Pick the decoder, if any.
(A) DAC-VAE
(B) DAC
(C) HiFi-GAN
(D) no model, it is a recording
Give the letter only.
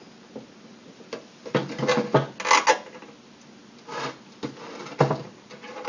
D